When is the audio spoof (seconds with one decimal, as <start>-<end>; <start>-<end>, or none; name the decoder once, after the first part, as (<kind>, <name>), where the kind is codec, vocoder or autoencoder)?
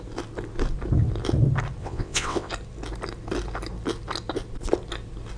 1.8-2.5 (vocoder, WaveNeXt)